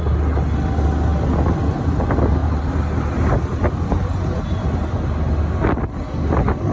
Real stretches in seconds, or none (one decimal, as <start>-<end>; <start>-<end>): 0.0-2.4; 3.7-6.7